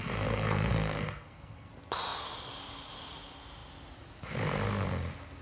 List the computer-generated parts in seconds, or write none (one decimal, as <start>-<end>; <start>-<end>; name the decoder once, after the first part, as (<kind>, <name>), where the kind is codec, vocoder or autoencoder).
0.0-1.7 (codec, SNAC)